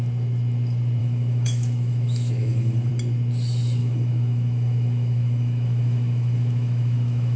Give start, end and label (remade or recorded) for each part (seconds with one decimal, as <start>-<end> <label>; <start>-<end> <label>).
0.0-1.0 recorded; 1.0-2.9 remade; 2.9-3.8 recorded; 3.8-7.4 remade